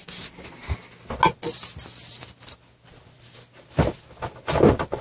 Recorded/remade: recorded